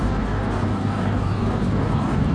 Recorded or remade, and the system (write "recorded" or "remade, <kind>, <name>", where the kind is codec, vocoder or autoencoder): remade, codec, DAC